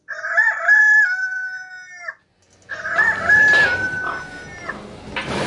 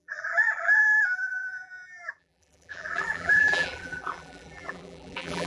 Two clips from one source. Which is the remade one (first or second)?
second